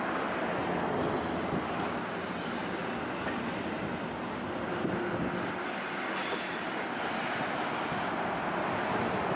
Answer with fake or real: real